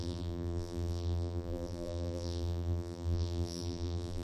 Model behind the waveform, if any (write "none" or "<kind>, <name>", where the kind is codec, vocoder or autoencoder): vocoder, BigVGAN v2